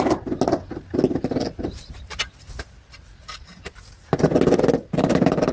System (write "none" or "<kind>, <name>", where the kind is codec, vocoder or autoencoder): none